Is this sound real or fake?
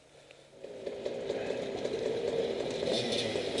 real